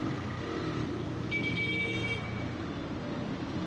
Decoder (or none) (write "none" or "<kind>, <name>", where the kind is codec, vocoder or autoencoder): none